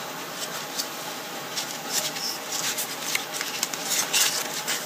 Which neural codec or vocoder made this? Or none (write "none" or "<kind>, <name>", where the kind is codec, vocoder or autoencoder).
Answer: none